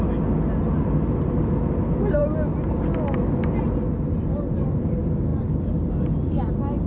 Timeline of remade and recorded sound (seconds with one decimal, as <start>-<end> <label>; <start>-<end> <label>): 0.0-6.9 recorded